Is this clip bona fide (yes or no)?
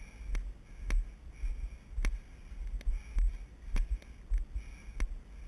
yes